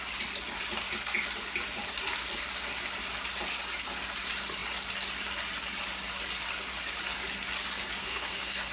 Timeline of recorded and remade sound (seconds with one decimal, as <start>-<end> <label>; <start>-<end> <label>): 0.0-8.0 recorded; 8.0-8.7 remade